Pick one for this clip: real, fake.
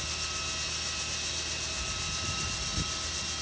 real